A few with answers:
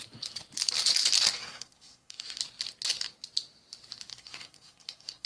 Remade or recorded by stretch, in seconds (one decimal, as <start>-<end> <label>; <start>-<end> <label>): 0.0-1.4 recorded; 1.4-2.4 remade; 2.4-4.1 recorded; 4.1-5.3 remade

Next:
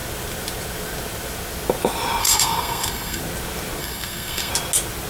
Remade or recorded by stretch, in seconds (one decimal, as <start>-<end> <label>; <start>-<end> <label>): 0.0-2.2 recorded; 2.2-3.2 remade; 3.2-3.8 recorded; 3.8-4.5 remade; 4.5-5.1 recorded

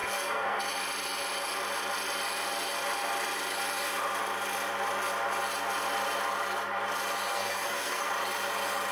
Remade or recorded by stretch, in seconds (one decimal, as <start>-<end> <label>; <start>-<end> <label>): 0.0-0.6 remade; 0.6-7.3 recorded; 7.3-8.1 remade; 8.1-8.9 recorded

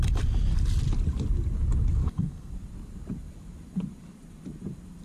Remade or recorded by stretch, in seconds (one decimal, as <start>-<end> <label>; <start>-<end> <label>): 0.0-2.0 recorded; 2.0-2.5 remade; 2.5-5.0 recorded

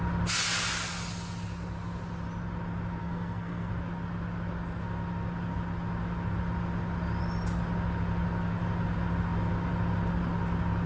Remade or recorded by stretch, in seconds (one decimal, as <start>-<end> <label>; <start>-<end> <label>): 0.0-3.0 recorded; 3.0-3.7 remade; 3.7-10.9 recorded